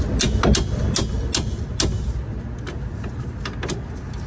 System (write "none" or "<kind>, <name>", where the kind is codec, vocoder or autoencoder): none